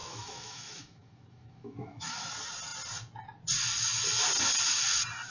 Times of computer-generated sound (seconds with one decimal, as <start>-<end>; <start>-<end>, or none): 0.0-2.3